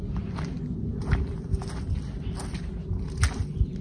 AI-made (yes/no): no